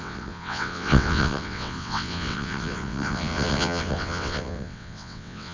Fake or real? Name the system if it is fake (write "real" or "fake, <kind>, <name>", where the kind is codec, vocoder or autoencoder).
fake, vocoder, WaveNeXt